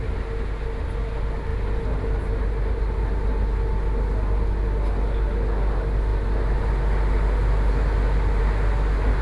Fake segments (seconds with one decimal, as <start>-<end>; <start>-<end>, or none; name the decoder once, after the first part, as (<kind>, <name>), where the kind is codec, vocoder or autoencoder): none